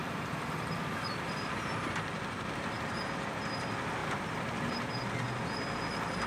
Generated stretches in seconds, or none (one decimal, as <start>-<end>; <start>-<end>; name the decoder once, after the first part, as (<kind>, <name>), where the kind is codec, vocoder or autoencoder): 0.0-2.9 (vocoder, BigVGAN v2); 4.0-5.2